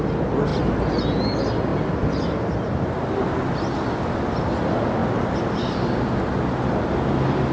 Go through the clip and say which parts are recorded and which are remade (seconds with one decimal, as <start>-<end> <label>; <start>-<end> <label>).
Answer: 0.0-7.5 recorded